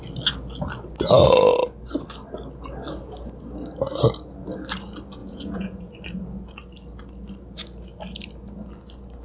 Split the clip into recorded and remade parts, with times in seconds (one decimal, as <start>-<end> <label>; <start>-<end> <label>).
0.0-5.2 recorded; 5.2-5.9 remade; 5.9-9.2 recorded